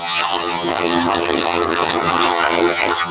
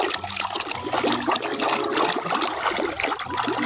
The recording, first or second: second